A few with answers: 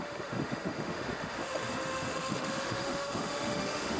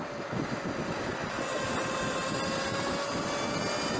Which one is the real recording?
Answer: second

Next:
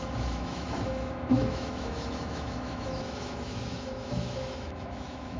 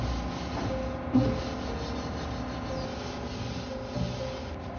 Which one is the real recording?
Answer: second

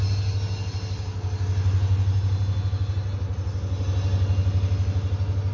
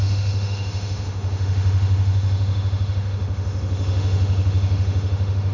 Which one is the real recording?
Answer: first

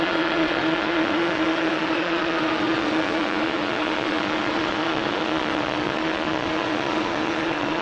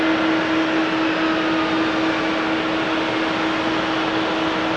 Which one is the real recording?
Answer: second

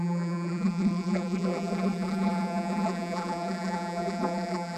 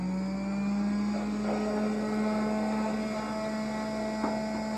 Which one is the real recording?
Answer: second